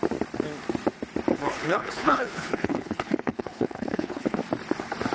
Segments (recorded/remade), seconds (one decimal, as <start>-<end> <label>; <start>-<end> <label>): 0.0-1.3 recorded; 1.3-4.4 remade; 4.4-5.1 recorded